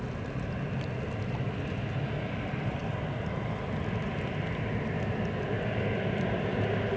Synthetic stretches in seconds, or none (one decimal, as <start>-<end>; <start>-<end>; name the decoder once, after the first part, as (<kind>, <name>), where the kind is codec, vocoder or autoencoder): none